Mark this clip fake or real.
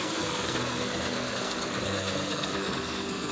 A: fake